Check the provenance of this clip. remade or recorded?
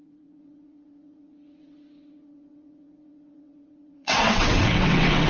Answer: remade